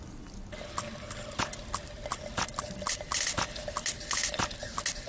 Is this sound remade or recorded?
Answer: recorded